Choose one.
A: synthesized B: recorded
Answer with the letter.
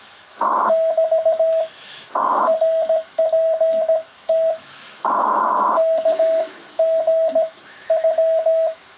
A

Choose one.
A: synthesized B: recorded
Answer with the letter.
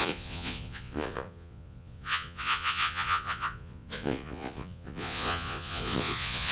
A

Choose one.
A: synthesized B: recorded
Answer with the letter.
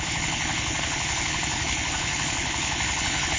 A